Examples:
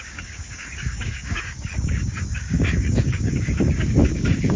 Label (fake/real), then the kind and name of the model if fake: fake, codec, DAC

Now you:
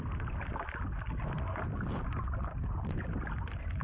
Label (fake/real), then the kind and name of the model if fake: real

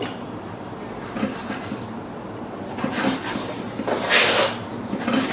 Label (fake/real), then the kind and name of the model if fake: real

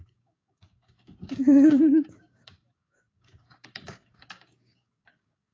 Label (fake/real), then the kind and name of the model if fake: fake, codec, DAC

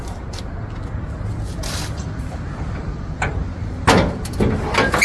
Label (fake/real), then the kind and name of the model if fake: real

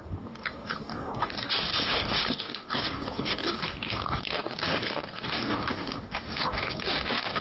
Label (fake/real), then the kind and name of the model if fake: fake, codec, DAC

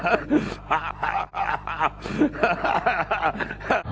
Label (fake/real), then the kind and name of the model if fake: real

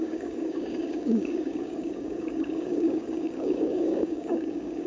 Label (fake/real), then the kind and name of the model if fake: fake, codec, DAC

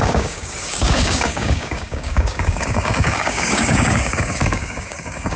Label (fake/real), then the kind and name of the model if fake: fake, codec, DAC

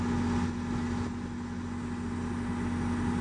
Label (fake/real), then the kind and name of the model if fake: real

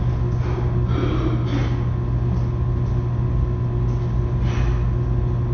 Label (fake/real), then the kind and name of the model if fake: real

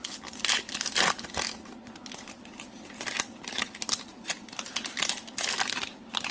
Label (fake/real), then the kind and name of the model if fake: real